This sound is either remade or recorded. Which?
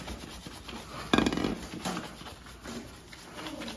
recorded